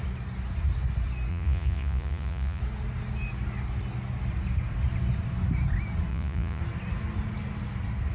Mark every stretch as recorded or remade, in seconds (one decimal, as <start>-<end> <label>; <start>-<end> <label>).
0.0-1.3 recorded; 1.3-2.6 remade; 2.6-6.1 recorded; 6.1-6.6 remade; 6.6-8.1 recorded